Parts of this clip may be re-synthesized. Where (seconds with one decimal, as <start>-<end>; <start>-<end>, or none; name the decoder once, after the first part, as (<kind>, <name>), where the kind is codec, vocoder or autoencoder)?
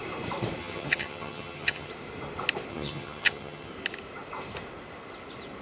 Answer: 0.6-1.9 (vocoder, HiFi-GAN); 2.7-3.7